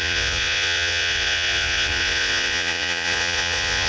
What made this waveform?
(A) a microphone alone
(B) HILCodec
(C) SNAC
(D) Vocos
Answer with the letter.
D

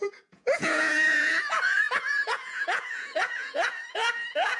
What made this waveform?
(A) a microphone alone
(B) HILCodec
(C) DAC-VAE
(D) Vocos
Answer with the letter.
D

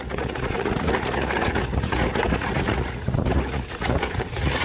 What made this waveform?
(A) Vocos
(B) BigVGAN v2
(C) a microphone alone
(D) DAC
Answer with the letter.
A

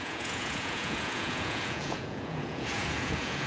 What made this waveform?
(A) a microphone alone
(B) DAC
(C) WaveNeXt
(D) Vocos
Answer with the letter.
D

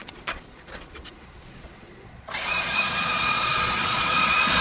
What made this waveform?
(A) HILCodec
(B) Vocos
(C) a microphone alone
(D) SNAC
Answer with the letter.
B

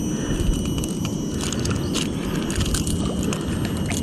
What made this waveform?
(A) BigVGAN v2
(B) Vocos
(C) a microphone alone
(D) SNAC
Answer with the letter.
C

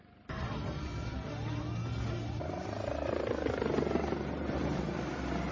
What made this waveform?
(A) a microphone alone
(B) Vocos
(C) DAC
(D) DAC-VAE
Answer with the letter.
A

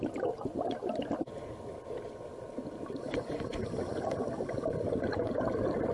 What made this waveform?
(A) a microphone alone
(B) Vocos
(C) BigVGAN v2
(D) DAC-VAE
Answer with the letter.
A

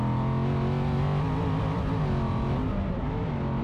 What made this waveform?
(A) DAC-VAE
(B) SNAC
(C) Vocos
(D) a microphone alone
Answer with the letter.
D